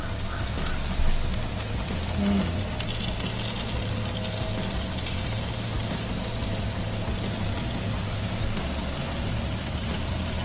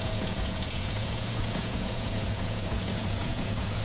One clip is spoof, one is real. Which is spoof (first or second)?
second